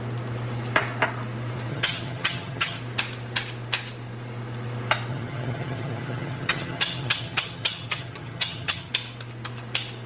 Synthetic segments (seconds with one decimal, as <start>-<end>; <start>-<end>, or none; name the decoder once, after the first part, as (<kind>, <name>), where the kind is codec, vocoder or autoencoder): 1.7-2.8 (vocoder, HiFi-GAN); 5.1-8.9